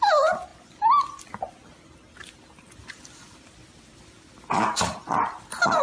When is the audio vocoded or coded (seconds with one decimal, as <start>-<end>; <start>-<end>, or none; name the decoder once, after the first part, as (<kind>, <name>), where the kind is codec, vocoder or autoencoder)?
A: 2.8-5.8 (vocoder, BigVGAN v2)